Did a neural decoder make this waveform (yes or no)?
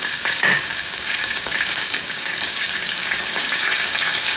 yes